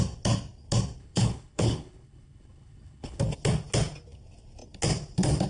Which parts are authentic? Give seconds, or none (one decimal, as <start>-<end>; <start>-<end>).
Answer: 0.0-1.0; 3.2-5.5